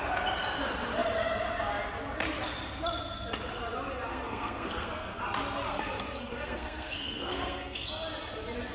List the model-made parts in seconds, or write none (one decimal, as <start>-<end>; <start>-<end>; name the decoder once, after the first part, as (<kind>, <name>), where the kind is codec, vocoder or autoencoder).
4.1-5.2 (codec, SNAC); 5.7-7.9